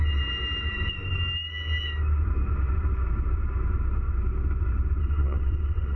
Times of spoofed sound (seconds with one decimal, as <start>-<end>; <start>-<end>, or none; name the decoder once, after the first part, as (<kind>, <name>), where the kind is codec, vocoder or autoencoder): 5.0-6.0 (vocoder, WaveNeXt)